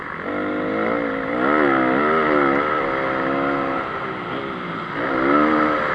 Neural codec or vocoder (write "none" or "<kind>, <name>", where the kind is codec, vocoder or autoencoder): none